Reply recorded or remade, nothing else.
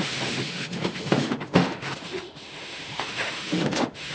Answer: remade